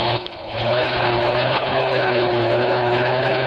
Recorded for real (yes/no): no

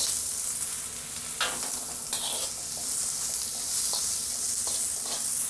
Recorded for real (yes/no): yes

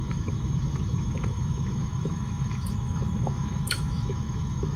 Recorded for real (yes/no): no